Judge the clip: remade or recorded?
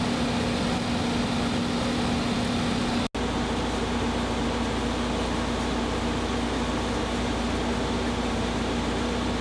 recorded